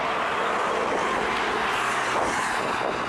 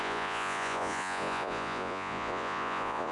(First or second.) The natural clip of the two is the first